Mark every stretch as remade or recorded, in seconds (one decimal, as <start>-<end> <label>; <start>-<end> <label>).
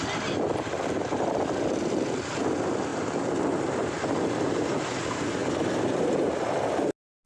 0.0-7.3 recorded